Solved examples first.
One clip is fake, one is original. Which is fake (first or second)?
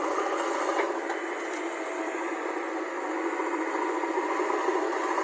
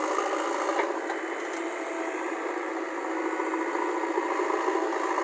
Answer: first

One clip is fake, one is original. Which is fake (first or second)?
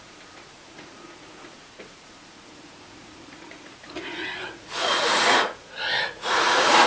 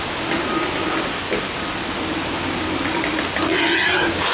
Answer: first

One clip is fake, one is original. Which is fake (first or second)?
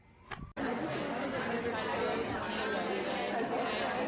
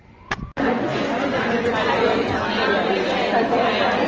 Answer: second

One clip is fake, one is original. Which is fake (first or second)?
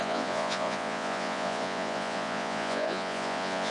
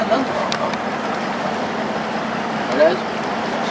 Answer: first